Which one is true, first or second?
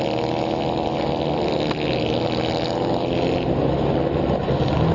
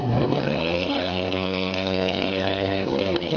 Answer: first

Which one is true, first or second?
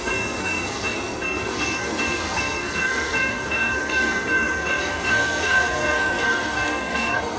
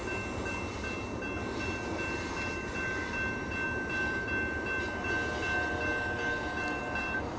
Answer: second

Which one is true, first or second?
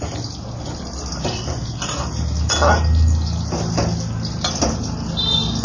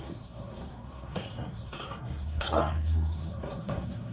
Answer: first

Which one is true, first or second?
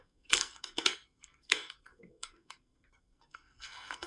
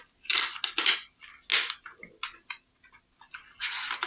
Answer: second